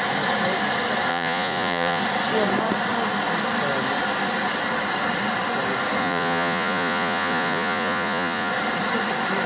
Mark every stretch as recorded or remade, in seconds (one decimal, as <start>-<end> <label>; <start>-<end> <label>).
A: 0.0-1.1 recorded; 1.1-2.0 remade; 2.0-6.0 recorded; 6.0-8.5 remade; 8.5-9.5 recorded